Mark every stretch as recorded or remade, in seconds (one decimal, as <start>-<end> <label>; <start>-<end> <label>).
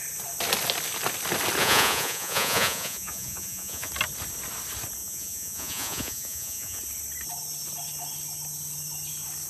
0.0-1.6 recorded; 1.6-3.9 remade; 3.9-5.0 recorded; 5.0-6.8 remade; 6.8-9.5 recorded